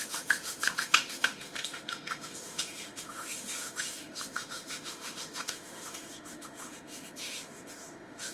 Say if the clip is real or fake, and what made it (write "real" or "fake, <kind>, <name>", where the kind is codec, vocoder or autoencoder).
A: fake, autoencoder, DAC-VAE